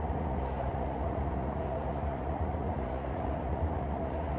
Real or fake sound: fake